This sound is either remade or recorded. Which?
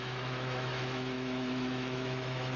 remade